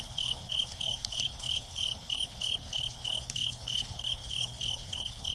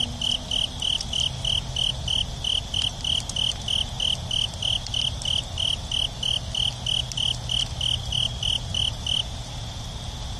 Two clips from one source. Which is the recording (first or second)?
second